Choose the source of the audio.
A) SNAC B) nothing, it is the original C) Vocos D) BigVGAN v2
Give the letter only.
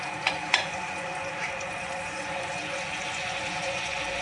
C